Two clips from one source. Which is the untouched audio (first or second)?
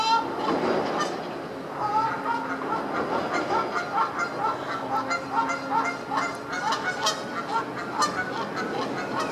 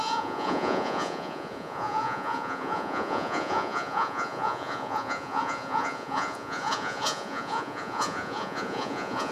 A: first